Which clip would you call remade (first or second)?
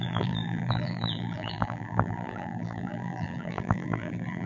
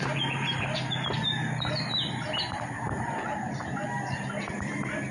first